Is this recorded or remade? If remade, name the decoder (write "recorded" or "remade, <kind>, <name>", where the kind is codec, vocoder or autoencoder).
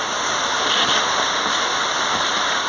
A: recorded